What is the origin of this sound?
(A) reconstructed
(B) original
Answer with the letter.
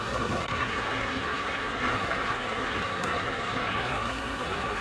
A